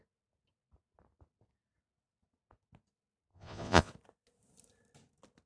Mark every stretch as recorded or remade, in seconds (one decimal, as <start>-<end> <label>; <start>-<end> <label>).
0.0-3.3 recorded; 3.3-3.9 remade; 3.9-5.5 recorded